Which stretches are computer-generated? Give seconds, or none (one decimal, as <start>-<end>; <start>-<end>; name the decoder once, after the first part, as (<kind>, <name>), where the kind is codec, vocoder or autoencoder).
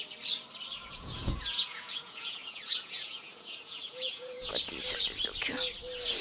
0.8-4.5 (vocoder, Vocos)